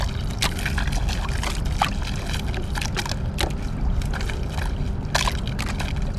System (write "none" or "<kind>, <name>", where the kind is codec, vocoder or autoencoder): none